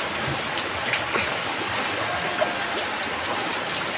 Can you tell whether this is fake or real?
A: real